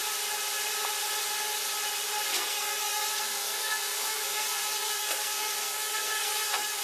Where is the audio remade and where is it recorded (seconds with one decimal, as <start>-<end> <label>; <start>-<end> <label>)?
0.0-2.3 recorded; 2.3-6.8 remade